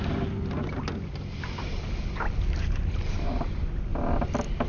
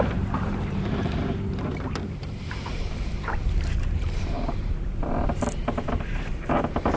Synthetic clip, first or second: second